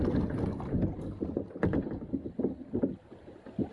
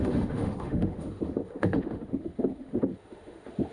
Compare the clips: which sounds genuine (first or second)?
first